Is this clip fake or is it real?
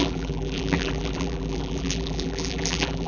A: fake